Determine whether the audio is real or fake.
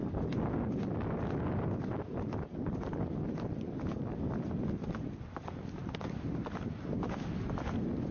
real